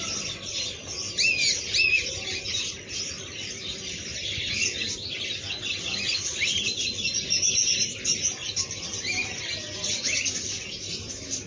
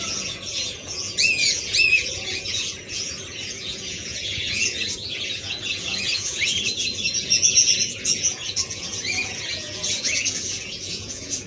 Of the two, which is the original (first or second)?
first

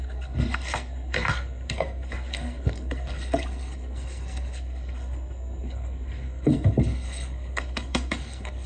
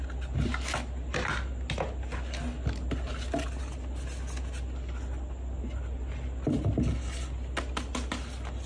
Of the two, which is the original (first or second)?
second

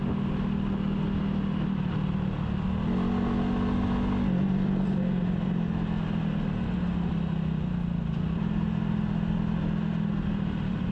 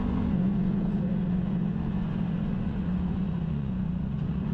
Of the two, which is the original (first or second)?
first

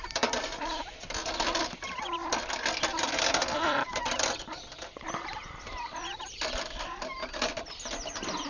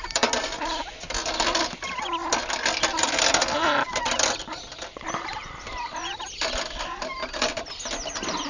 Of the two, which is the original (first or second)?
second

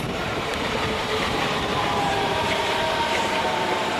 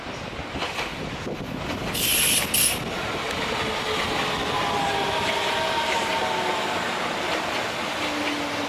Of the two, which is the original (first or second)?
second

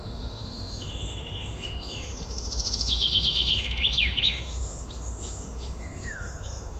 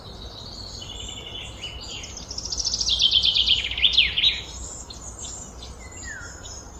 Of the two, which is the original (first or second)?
second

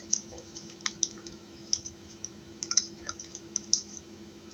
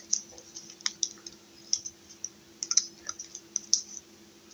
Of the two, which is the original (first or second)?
second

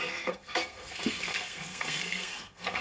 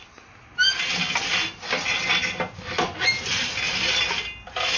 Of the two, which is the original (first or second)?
second